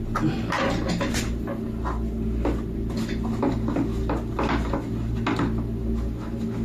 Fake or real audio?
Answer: real